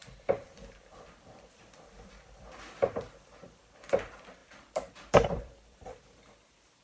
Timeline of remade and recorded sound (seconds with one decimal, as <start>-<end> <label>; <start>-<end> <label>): 0.0-6.8 remade